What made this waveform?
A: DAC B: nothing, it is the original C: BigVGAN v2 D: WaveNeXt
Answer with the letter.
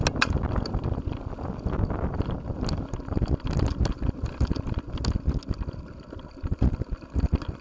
B